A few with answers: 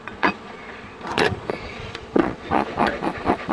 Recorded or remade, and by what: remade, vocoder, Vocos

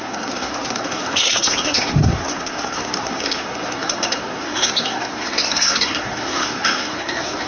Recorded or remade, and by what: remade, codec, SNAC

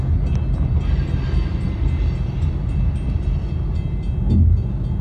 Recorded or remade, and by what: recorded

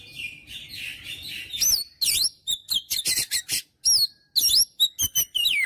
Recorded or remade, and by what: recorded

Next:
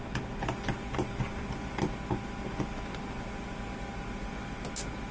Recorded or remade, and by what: recorded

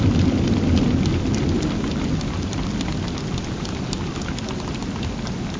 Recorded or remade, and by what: recorded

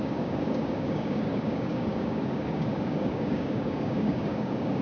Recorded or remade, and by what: remade, codec, DAC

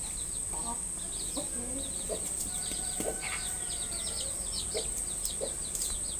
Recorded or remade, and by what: recorded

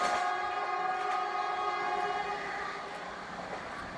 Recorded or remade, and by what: recorded